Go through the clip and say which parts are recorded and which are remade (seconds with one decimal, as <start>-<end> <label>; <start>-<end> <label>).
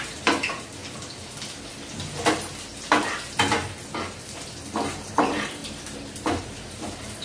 0.0-0.8 remade; 0.8-5.1 recorded; 5.1-5.6 remade; 5.6-6.4 recorded; 6.4-7.2 remade